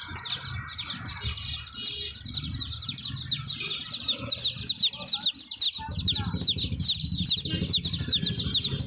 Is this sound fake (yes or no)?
no